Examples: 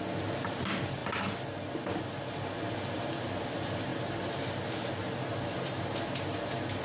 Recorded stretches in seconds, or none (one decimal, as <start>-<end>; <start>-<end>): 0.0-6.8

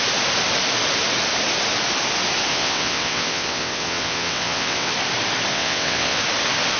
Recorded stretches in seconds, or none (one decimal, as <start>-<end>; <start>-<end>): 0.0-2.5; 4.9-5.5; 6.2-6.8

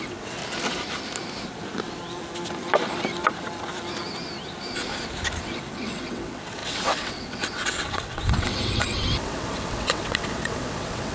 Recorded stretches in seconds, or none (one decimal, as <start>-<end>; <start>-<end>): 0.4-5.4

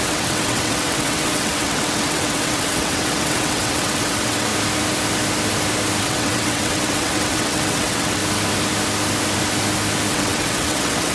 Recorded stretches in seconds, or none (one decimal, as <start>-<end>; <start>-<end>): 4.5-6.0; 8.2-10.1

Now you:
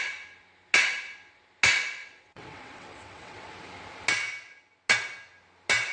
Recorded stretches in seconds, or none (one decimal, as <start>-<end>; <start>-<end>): 0.0-2.0; 3.5-5.9